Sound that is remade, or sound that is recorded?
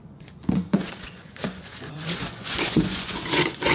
remade